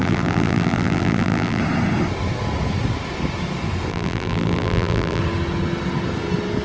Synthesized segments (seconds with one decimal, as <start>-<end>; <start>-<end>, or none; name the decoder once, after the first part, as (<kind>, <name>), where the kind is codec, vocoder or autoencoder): 0.0-1.6 (vocoder, BigVGAN v2); 3.9-5.2